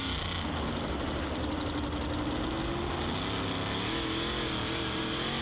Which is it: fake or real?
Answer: real